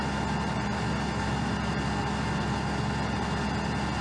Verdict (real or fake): real